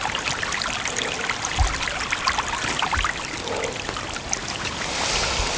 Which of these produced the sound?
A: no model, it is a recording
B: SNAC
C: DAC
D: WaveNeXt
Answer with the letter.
A